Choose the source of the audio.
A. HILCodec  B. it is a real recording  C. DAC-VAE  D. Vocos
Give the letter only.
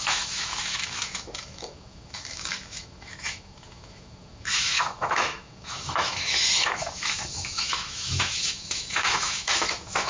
C